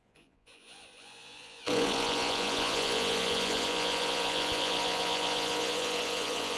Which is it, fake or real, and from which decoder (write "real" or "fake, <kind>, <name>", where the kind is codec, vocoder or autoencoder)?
fake, vocoder, Vocos